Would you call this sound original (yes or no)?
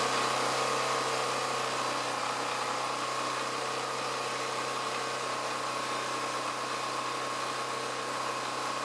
yes